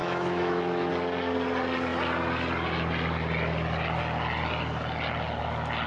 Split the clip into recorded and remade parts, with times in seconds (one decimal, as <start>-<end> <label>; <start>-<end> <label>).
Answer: 0.0-0.9 remade; 0.9-5.9 recorded